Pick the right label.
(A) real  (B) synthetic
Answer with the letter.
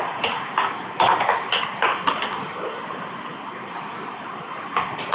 A